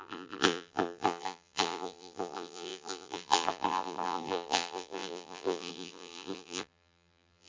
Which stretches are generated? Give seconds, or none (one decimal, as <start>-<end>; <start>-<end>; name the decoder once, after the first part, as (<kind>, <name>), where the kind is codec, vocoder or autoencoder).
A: 0.0-7.5 (vocoder, BigVGAN v2)